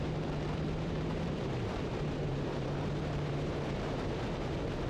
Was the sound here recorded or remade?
remade